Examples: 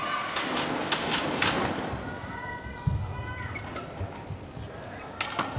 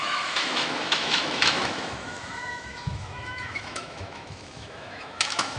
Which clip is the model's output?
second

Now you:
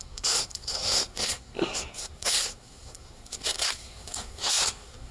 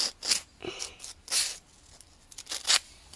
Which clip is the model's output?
first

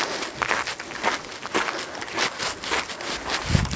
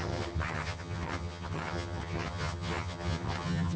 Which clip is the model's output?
second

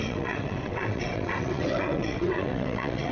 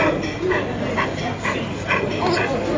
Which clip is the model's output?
first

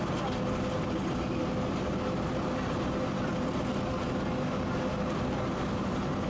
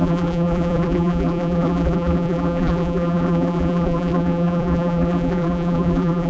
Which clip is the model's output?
second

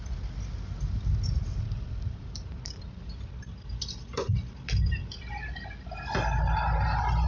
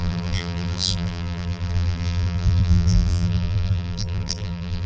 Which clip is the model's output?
second